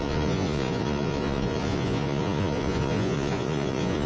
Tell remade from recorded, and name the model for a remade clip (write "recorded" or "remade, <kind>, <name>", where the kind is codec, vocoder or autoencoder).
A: remade, vocoder, Vocos